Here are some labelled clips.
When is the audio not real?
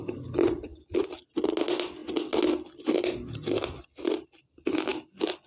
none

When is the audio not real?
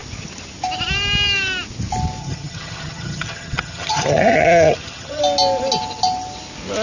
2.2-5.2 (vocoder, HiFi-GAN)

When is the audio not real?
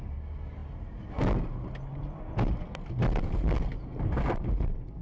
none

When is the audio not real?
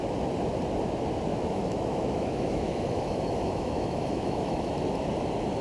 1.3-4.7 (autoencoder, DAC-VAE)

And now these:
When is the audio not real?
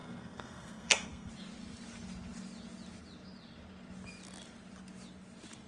0.0-1.3 (codec, SNAC)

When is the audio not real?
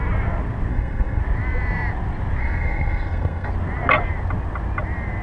0.7-1.2 (codec, SNAC); 2.4-3.5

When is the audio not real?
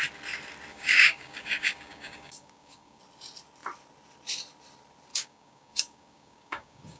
0.7-3.0 (codec, DAC); 5.1-7.0